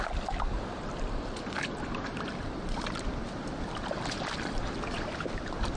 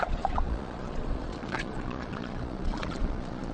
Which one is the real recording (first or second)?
first